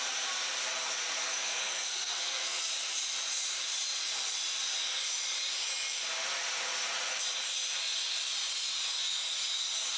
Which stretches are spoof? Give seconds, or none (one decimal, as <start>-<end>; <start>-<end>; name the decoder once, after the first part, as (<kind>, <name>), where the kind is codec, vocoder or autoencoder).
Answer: 1.2-2.7 (codec, SNAC)